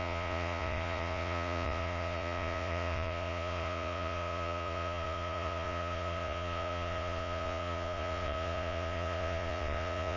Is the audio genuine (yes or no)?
no